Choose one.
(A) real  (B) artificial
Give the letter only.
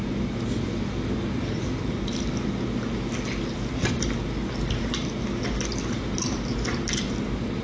A